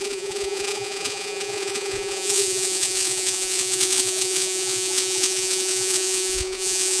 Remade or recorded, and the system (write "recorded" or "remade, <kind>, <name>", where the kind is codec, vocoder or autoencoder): remade, vocoder, Vocos